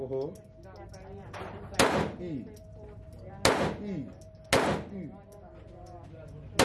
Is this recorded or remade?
recorded